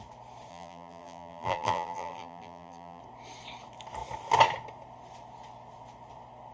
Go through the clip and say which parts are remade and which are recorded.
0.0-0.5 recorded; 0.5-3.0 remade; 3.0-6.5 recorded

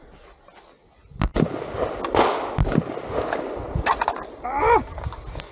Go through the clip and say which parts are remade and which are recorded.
0.0-5.5 recorded

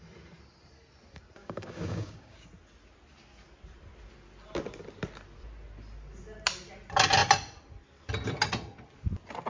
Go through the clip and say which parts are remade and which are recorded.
0.0-1.4 recorded; 1.4-2.5 remade; 2.5-9.5 recorded

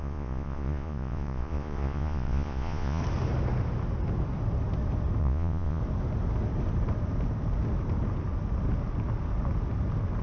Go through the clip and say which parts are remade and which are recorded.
0.0-3.0 remade; 3.0-5.2 recorded; 5.2-5.8 remade; 5.8-10.2 recorded

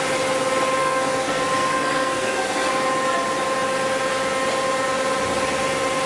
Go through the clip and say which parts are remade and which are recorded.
0.0-0.8 recorded; 0.8-2.7 remade; 2.7-6.1 recorded